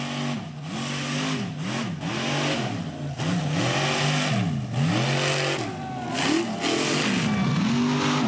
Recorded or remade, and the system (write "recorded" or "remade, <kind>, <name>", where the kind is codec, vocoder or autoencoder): recorded